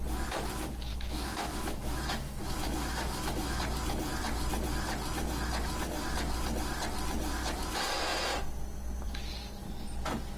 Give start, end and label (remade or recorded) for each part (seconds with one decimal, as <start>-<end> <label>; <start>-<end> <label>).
0.0-0.9 recorded; 0.9-3.6 remade; 3.6-10.4 recorded